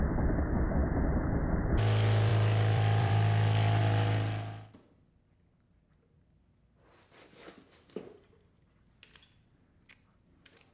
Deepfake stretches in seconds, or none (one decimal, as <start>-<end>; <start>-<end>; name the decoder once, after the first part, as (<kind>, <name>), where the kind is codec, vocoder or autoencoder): 2.3-3.8 (vocoder, BigVGAN v2)

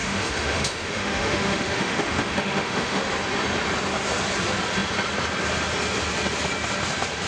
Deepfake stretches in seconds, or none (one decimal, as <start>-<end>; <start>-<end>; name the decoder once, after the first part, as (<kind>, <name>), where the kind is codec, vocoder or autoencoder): 0.0-3.0 (autoencoder, DAC-VAE)

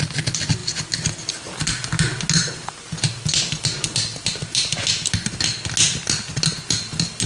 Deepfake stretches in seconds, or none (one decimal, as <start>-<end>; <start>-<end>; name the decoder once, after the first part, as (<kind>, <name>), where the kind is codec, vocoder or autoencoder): none

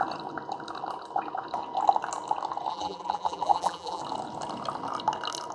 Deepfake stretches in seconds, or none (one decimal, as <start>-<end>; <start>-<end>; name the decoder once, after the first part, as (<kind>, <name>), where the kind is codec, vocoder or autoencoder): 2.7-4.0 (vocoder, BigVGAN v2)

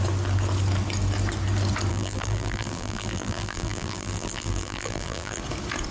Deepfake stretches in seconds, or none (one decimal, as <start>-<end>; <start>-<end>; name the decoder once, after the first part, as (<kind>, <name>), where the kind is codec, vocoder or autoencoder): 1.9-5.4 (vocoder, BigVGAN v2)